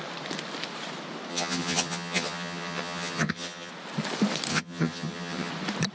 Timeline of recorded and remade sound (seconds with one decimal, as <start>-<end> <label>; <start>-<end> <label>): 0.0-1.3 recorded; 1.3-3.7 remade; 3.7-4.5 recorded; 4.5-5.5 remade; 5.5-5.9 recorded